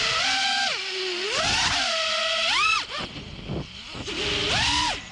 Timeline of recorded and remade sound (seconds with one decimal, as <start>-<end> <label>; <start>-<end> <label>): 0.0-5.1 recorded